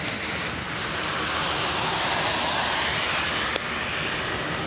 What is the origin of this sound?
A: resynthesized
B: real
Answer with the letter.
B